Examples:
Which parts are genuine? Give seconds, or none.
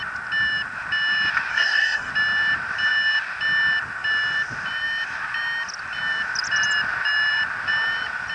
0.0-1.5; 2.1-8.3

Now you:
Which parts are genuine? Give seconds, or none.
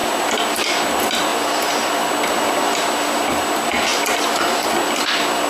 0.5-1.3; 2.1-3.9; 4.7-5.5